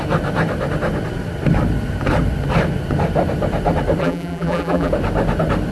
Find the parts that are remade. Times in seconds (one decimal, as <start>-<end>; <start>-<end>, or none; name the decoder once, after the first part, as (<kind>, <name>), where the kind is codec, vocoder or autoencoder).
4.0-4.9 (vocoder, BigVGAN v2)